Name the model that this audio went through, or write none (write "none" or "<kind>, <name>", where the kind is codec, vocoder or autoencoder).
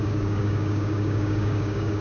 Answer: codec, DAC